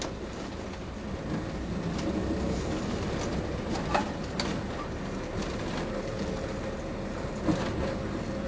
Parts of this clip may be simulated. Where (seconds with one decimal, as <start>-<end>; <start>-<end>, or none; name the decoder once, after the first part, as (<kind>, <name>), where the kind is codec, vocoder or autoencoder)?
none

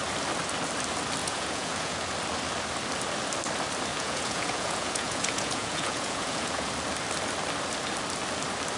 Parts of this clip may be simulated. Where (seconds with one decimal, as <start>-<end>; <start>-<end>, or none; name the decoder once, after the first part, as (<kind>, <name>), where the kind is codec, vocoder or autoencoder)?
1.2-2.1 (vocoder, Vocos); 3.9-6.7

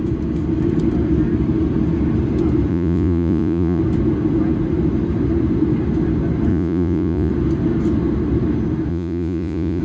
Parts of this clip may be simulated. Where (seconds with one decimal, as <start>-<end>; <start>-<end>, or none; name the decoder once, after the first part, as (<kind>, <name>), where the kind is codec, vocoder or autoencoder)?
2.7-3.8 (vocoder, Vocos); 6.5-7.3; 8.9-9.8

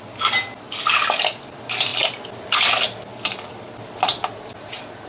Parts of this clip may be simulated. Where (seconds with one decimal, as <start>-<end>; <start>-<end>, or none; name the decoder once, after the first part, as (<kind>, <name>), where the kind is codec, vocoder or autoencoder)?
none

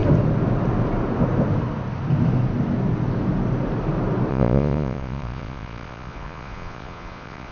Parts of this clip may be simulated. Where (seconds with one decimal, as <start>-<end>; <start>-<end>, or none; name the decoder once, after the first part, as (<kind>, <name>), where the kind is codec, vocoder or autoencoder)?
4.3-7.5 (vocoder, Vocos)